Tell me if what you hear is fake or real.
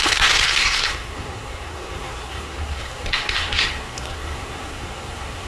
fake